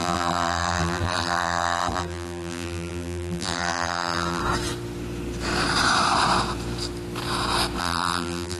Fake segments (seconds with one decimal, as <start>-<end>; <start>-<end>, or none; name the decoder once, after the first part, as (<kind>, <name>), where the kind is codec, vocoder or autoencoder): 0.0-4.4 (vocoder, BigVGAN v2); 7.8-8.6